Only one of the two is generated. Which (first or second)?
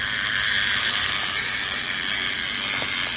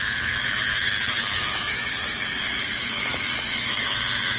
second